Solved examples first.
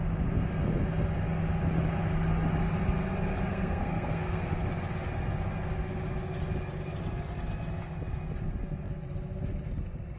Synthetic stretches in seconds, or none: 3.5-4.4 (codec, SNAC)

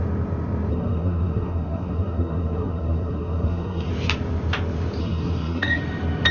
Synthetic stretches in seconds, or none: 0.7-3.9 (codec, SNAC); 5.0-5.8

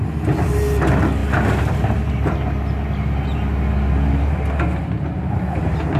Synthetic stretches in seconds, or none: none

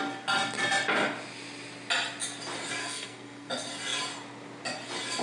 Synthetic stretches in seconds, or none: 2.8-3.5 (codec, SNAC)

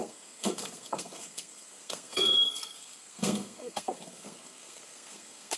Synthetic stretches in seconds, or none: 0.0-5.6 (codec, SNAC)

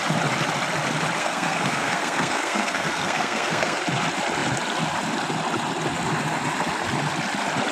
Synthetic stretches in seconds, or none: 1.2-3.8 (codec, SNAC)